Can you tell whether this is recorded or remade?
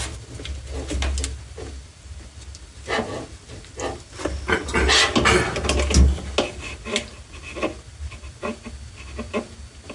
recorded